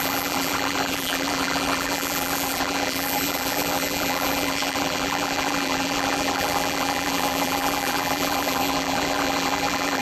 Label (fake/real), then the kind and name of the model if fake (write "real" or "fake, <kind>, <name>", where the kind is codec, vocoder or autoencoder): fake, vocoder, BigVGAN v2